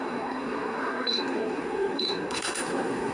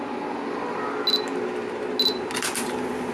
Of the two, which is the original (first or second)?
second